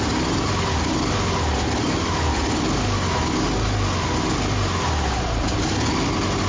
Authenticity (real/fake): real